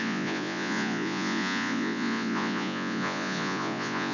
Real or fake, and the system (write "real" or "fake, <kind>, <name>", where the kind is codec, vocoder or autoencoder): fake, vocoder, Vocos